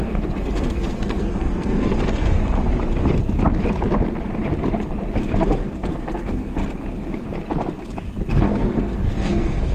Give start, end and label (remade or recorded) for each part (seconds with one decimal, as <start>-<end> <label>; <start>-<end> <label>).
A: 0.0-2.4 remade; 2.4-5.2 recorded; 5.2-6.6 remade; 6.6-8.3 recorded; 8.3-9.7 remade